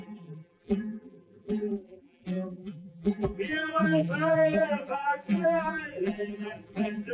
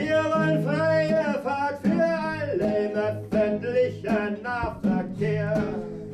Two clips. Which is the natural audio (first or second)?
second